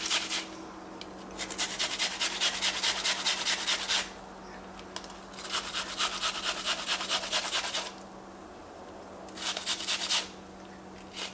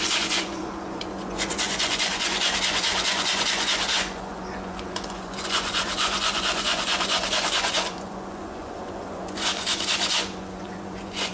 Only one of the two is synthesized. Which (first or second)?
second